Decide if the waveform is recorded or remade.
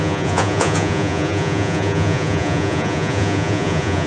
remade